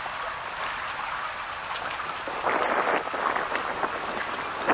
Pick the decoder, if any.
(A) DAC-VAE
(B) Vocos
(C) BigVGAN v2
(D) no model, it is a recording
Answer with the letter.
D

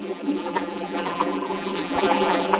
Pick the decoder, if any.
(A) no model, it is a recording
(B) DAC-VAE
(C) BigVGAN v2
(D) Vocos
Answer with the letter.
C